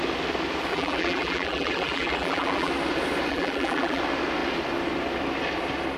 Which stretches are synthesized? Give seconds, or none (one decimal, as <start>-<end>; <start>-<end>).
0.7-2.7; 3.3-4.0